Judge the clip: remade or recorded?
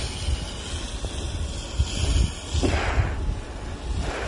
recorded